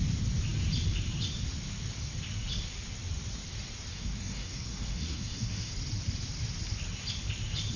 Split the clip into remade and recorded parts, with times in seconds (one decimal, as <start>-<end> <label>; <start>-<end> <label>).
0.0-3.9 recorded; 3.9-5.7 remade; 5.7-7.8 recorded